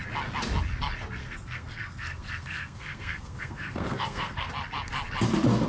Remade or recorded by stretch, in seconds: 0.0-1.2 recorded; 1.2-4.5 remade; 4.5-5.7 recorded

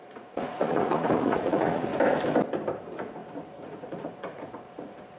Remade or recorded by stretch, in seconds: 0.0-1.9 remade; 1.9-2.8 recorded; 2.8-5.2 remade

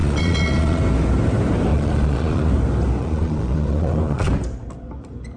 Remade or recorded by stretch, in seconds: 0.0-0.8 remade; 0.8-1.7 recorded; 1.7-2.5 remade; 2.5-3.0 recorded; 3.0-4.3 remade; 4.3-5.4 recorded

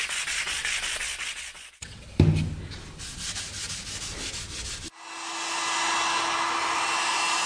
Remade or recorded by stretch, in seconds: 0.0-2.0 remade; 2.0-7.5 recorded

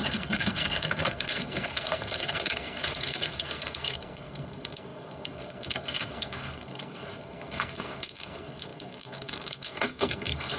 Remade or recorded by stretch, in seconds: 0.0-10.6 remade

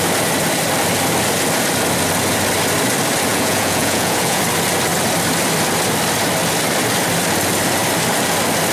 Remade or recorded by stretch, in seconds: 0.0-3.3 recorded; 3.3-4.4 remade; 4.4-8.7 recorded

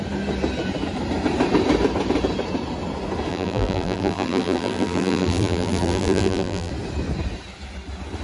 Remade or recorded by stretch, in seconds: 0.0-3.3 recorded; 3.3-6.7 remade; 6.7-8.2 recorded